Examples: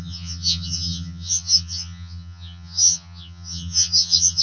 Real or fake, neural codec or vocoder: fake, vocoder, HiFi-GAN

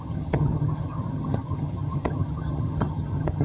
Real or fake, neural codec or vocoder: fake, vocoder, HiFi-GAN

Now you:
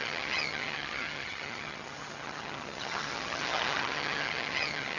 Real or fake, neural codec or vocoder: fake, vocoder, HiFi-GAN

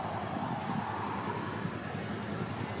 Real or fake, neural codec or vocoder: real